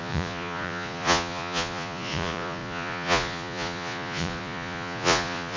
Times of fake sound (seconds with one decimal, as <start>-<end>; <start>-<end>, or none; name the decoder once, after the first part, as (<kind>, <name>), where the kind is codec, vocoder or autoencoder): 0.0-5.6 (vocoder, Vocos)